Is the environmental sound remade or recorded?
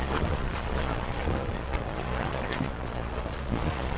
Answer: remade